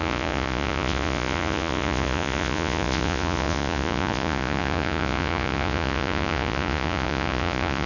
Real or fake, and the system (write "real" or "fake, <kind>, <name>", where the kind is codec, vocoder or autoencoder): fake, vocoder, Vocos